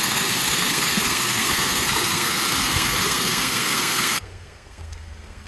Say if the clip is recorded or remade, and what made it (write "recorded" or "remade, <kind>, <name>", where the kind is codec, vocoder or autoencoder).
remade, codec, SNAC